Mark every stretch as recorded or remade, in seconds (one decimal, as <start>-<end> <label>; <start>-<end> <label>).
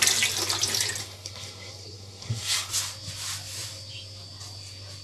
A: 0.0-1.0 recorded; 1.0-2.7 remade; 2.7-5.0 recorded